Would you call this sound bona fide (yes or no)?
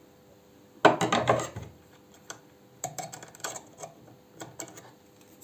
yes